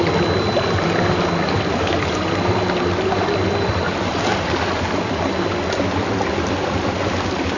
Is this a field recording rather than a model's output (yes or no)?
yes